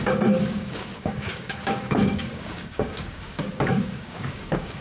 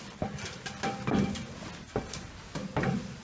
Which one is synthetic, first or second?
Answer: first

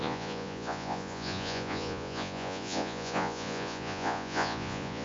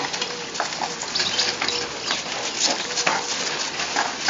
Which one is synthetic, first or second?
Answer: first